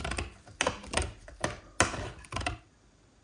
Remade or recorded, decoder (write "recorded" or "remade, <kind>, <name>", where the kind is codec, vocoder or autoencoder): recorded